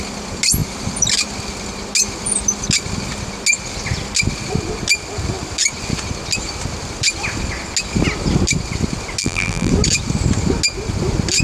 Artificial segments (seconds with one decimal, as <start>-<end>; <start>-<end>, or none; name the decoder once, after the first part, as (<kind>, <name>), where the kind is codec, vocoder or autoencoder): 9.2-9.7 (vocoder, BigVGAN v2)